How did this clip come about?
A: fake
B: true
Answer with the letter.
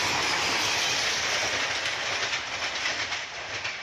B